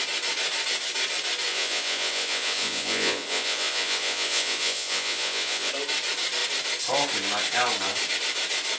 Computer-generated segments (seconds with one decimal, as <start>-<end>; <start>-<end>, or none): 1.5-5.7